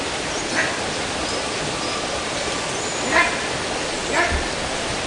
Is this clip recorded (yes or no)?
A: yes